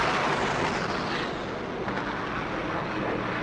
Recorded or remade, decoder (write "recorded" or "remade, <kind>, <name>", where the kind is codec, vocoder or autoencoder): recorded